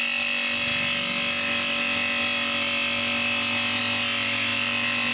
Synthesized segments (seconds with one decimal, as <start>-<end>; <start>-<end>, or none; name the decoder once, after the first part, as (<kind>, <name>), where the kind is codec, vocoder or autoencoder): none